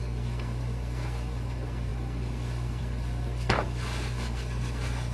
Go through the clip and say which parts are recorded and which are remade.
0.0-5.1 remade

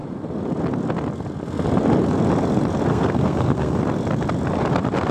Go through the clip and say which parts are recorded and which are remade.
0.0-2.9 recorded; 2.9-3.8 remade; 3.8-5.1 recorded

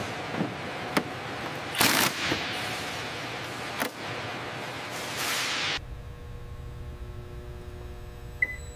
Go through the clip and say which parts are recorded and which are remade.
0.0-1.6 recorded; 1.6-2.8 remade; 2.8-8.8 recorded